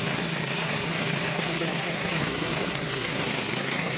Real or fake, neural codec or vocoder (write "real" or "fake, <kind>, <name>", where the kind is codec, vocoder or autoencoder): fake, codec, SNAC